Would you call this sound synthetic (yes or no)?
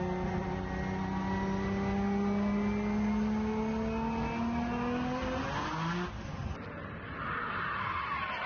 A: no